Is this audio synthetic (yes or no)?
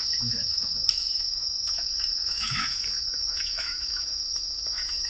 yes